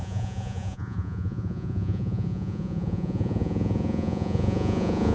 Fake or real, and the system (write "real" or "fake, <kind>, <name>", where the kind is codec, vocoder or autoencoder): fake, vocoder, Vocos